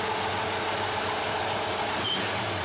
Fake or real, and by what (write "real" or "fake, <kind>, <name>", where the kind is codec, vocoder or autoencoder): real